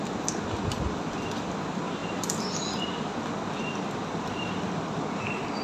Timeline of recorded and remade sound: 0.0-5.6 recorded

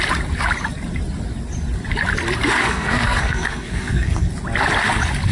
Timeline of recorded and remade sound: 0.0-2.6 recorded; 2.6-4.3 remade; 4.3-5.3 recorded

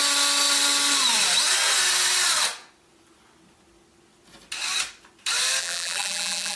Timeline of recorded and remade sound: 0.0-5.6 recorded; 5.6-6.6 remade

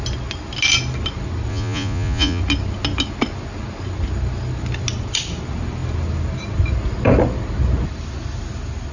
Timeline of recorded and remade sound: 0.0-1.5 recorded; 1.5-2.4 remade; 2.4-8.9 recorded